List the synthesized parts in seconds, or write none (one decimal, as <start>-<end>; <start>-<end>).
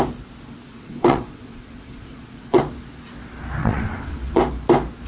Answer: 0.7-2.6; 3.6-4.4